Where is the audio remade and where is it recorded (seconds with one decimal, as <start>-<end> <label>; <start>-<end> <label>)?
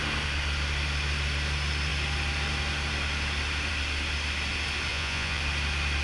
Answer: 0.0-4.9 recorded; 4.9-5.4 remade; 5.4-6.0 recorded